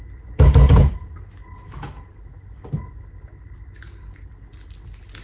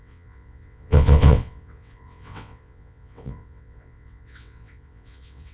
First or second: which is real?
first